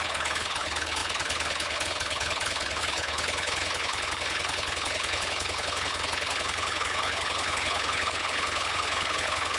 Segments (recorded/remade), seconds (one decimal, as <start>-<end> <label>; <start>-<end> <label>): 0.0-9.6 remade